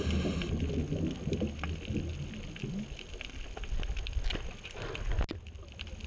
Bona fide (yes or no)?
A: yes